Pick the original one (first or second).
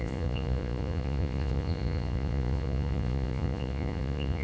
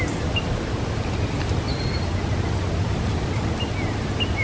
second